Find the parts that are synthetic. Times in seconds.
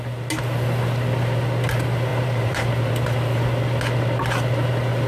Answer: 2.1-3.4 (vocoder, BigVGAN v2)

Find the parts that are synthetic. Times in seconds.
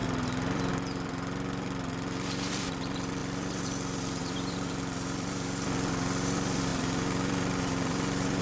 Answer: 0.0-8.4 (vocoder, BigVGAN v2)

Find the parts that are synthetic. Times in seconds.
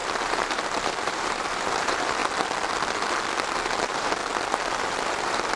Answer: 0.0-2.2 (vocoder, BigVGAN v2); 3.8-4.2; 4.8-5.6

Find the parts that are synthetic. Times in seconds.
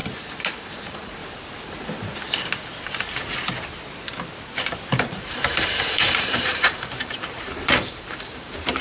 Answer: 0.5-1.2 (vocoder, BigVGAN v2); 5.0-8.8